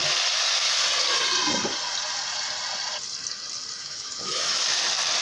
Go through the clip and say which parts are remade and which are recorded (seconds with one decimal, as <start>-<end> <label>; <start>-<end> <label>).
0.0-3.8 recorded; 3.8-4.6 remade; 4.6-5.2 recorded